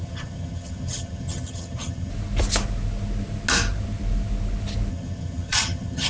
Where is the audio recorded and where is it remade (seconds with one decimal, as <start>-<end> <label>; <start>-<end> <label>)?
0.0-2.1 remade; 2.1-4.9 recorded; 4.9-6.1 remade